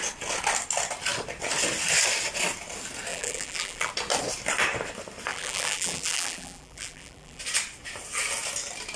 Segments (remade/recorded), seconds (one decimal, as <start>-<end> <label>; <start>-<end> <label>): 0.0-3.1 recorded; 3.1-3.9 remade; 3.9-5.3 recorded; 5.3-7.4 remade; 7.4-9.0 recorded